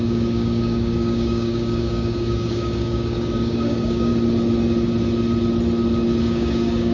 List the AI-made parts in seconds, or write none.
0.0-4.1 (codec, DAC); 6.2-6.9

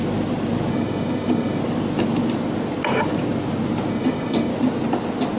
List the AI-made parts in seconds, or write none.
0.7-1.6 (codec, DAC); 3.9-4.5

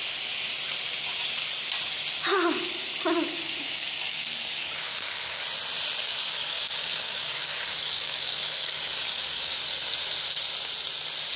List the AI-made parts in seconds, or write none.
4.1-5.4 (codec, DAC); 6.0-9.6

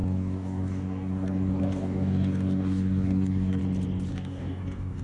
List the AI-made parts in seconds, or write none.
0.0-3.6 (codec, DAC); 4.1-5.0

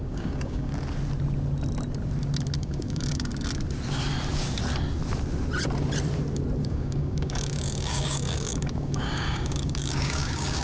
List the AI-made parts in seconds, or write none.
0.0-0.7 (codec, DAC); 2.6-3.3; 6.6-10.6

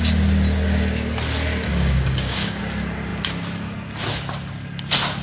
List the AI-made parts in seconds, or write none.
1.7-2.6 (codec, DAC)

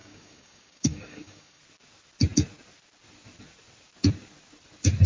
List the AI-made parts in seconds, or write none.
0.0-1.6 (codec, DAC)

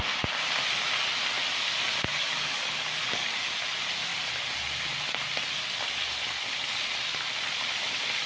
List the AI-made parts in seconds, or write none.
2.1-3.5 (codec, DAC)